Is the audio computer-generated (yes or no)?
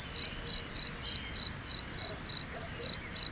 no